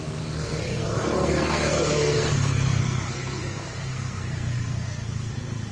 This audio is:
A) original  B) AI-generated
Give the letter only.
B